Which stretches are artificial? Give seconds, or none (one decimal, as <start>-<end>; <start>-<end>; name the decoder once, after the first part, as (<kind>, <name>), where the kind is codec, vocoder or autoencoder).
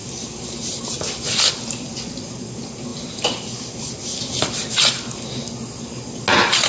2.9-4.2 (vocoder, BigVGAN v2)